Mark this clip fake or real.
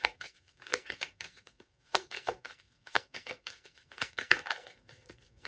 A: fake